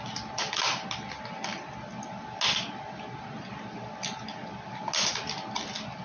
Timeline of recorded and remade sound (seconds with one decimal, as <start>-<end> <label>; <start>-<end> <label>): 0.0-6.0 recorded